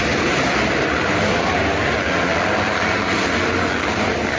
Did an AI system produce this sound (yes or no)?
no